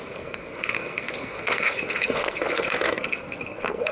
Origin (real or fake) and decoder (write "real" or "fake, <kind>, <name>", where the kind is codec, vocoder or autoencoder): fake, codec, SNAC